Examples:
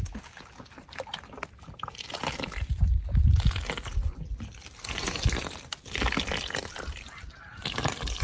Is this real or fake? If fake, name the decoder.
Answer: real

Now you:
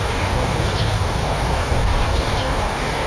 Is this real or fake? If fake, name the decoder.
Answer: fake, codec, DAC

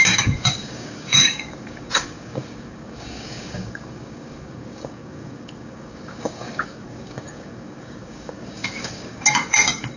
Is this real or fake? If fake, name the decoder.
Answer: fake, codec, DAC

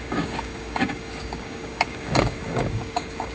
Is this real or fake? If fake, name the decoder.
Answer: fake, codec, DAC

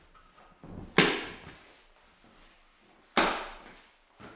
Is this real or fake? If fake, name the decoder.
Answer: real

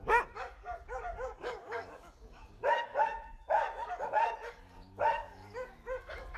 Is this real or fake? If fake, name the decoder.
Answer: fake, codec, DAC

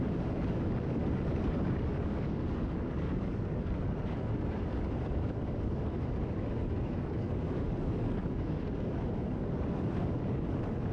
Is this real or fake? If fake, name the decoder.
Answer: fake, codec, DAC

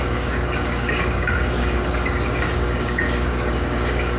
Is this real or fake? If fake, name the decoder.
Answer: fake, codec, DAC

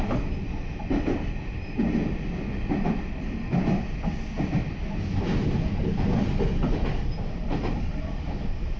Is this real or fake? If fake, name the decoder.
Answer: real